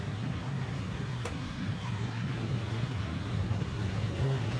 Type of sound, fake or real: fake